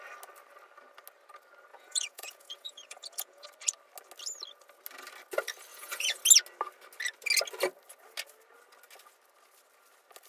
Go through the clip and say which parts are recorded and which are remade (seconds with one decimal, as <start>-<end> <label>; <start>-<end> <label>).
0.0-1.7 recorded; 1.7-3.5 remade; 3.5-5.7 recorded; 5.7-6.2 remade; 6.2-10.3 recorded